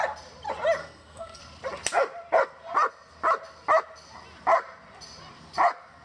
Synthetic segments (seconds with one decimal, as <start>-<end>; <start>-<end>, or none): 0.8-1.4